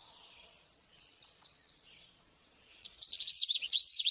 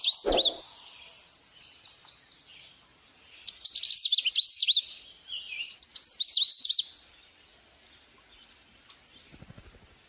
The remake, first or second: first